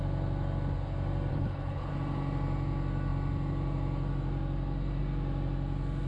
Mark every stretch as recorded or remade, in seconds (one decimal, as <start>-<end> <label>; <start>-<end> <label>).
0.0-1.3 recorded; 1.3-1.9 remade; 1.9-6.1 recorded